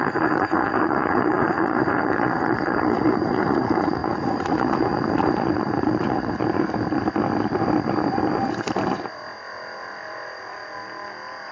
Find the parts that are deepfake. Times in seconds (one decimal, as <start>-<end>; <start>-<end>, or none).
0.0-6.4; 8.9-10.6